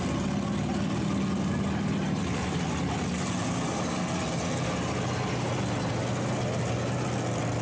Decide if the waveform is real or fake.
real